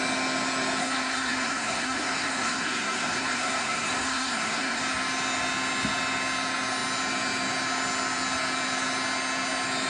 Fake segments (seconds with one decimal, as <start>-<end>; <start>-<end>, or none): 0.8-4.8